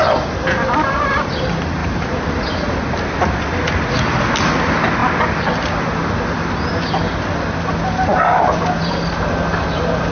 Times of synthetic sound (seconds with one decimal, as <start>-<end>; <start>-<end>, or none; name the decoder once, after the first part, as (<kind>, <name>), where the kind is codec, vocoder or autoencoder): none

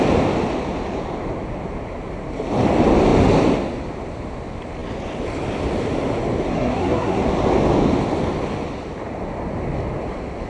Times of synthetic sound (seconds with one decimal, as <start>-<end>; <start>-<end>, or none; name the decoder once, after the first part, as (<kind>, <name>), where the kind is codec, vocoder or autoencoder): 6.5-7.2 (codec, SNAC)

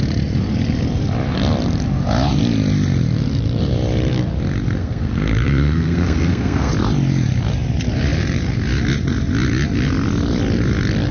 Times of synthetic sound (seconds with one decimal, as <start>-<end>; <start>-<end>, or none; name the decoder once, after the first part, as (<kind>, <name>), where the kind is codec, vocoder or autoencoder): 4.8-6.7 (codec, SNAC)

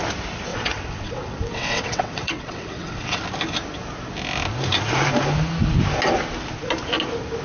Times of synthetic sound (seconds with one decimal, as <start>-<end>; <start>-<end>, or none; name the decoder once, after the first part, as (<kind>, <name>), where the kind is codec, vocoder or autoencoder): 0.5-3.2 (vocoder, WaveNeXt)

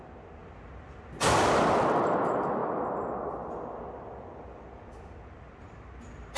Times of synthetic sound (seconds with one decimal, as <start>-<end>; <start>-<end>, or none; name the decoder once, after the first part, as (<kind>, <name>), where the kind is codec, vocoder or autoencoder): none

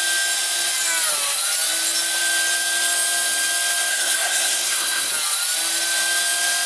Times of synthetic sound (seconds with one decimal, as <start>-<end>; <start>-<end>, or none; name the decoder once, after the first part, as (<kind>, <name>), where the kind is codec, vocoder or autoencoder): 3.9-5.1 (codec, SNAC)